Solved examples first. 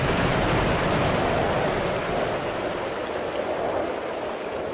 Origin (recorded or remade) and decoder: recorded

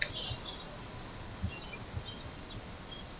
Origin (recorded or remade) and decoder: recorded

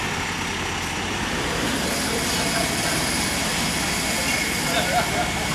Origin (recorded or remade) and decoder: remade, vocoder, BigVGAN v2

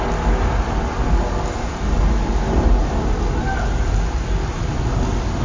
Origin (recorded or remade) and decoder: recorded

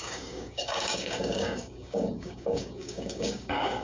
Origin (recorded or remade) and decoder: remade, codec, DAC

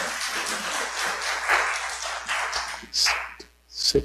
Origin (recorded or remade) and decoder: recorded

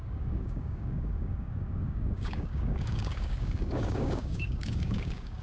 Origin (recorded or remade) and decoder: remade, codec, DAC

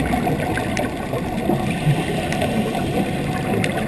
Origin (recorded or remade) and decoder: recorded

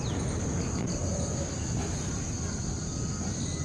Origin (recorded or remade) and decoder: recorded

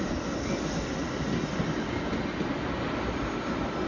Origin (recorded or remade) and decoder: recorded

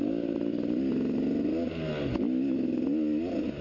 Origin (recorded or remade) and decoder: recorded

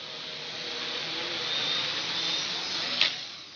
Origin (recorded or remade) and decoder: recorded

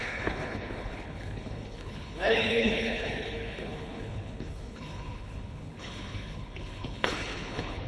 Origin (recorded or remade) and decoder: remade, codec, HILCodec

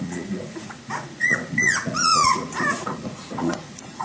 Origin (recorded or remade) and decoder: remade, vocoder, Vocos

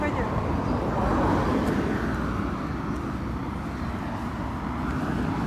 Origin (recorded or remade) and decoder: recorded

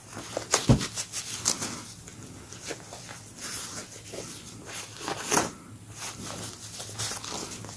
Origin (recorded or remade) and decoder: recorded